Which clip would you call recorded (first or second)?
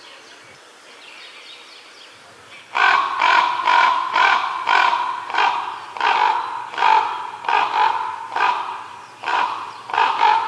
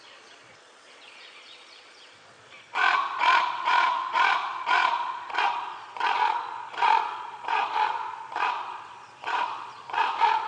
first